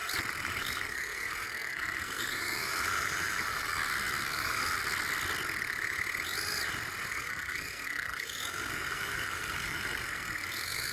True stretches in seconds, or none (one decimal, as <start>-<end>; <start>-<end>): 0.0-0.6; 4.6-7.1